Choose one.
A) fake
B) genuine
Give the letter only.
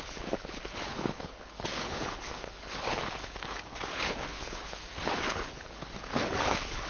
A